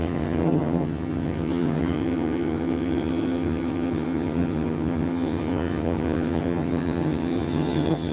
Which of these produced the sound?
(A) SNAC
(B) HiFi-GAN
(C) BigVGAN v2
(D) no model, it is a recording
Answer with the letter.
B